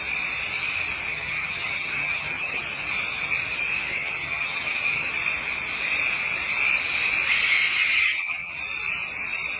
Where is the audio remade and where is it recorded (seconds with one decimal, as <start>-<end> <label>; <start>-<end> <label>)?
0.0-1.1 recorded; 1.1-2.6 remade; 2.6-3.9 recorded; 3.9-5.1 remade; 5.1-7.8 recorded; 7.8-8.6 remade; 8.6-9.6 recorded